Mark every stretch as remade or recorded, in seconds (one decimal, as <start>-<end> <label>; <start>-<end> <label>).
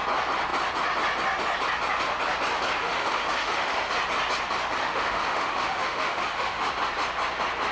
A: 0.0-2.8 recorded; 2.8-3.9 remade; 3.9-4.8 recorded; 4.8-6.7 remade; 6.7-7.7 recorded